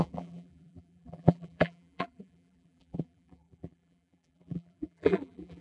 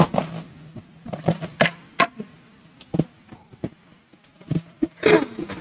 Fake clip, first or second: first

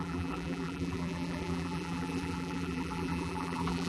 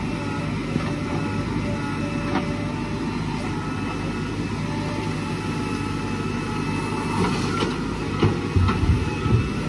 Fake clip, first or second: first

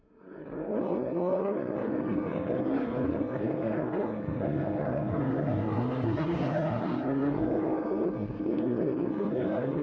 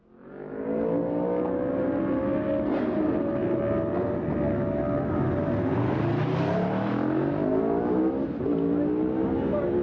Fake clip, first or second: first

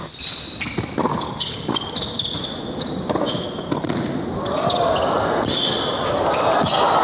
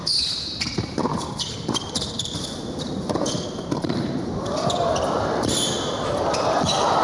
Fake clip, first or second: second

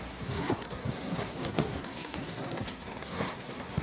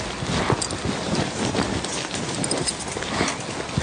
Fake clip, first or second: first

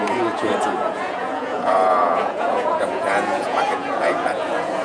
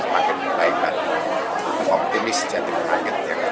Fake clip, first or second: first